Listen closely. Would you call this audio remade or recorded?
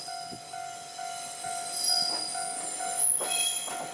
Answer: recorded